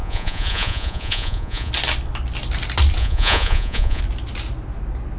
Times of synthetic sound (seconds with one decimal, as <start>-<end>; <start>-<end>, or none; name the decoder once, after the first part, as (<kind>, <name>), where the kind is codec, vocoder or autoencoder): 0.0-1.7 (vocoder, Vocos); 3.0-4.0